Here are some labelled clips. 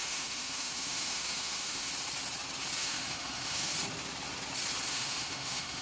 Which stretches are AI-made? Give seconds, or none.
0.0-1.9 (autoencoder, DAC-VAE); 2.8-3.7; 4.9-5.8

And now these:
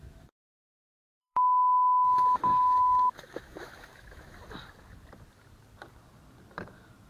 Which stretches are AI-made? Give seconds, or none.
0.8-4.4 (autoencoder, DAC-VAE)